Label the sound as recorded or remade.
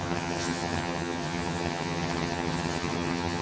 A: remade